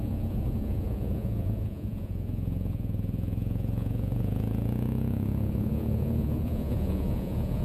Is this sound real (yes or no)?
no